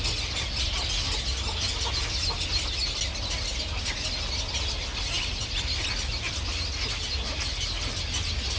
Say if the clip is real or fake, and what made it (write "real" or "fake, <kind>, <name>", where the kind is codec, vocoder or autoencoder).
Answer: real